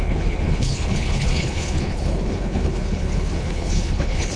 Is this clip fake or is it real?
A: fake